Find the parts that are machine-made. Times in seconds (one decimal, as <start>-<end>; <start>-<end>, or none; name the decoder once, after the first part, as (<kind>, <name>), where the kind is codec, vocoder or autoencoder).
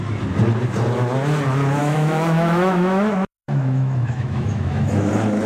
1.8-5.1 (autoencoder, DAC-VAE)